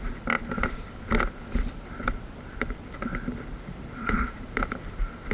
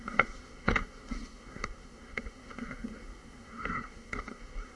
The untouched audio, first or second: first